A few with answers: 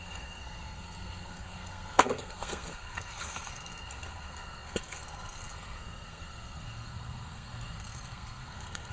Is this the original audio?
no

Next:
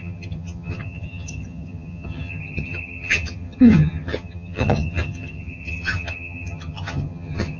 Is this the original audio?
no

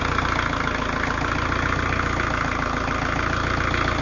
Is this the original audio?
yes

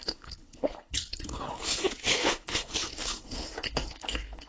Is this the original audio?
no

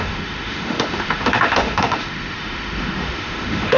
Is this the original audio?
no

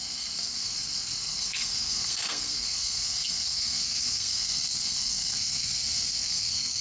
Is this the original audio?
no